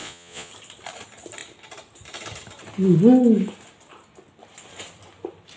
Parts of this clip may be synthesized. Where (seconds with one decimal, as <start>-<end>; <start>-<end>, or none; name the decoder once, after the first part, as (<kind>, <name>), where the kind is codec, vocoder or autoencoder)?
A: 0.0-0.5 (vocoder, Vocos)